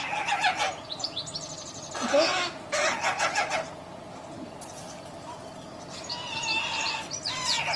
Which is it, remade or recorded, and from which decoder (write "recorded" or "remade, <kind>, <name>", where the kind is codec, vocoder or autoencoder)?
recorded